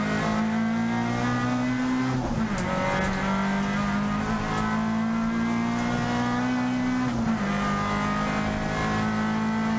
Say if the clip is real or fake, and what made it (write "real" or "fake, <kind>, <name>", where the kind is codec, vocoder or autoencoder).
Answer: real